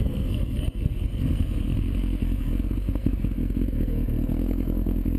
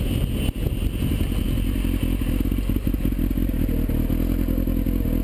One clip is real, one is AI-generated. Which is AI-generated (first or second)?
first